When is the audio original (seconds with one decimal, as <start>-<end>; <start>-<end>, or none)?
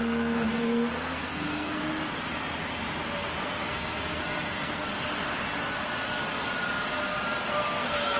1.8-3.4; 4.9-7.5